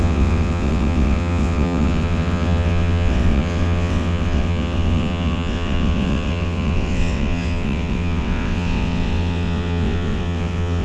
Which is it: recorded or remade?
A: remade